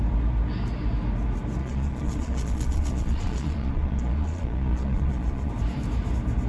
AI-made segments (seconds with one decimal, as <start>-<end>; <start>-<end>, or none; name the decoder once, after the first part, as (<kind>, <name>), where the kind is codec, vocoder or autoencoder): 1.6-5.5 (vocoder, Vocos)

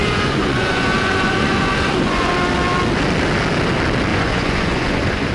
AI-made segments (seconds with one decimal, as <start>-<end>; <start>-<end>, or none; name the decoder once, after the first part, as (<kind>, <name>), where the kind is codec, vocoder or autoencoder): 0.0-2.3 (vocoder, Vocos); 4.1-5.3

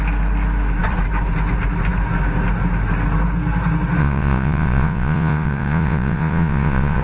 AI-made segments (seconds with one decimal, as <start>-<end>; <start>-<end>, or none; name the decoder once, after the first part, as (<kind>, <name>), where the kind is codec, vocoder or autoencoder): 4.0-7.0 (vocoder, Vocos)

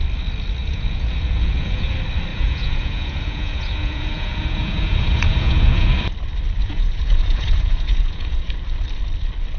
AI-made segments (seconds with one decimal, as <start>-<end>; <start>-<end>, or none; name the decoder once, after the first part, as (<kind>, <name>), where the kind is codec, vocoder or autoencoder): 0.6-1.9 (vocoder, Vocos); 2.3-6.0; 6.6-8.5